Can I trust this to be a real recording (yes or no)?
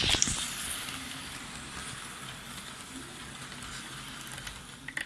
yes